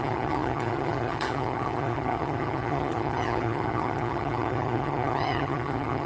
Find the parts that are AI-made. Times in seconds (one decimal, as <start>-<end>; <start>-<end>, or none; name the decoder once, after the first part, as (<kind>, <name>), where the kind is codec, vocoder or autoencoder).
0.0-6.1 (vocoder, HiFi-GAN)